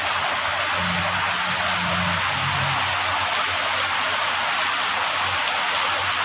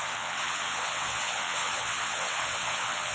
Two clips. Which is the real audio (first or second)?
first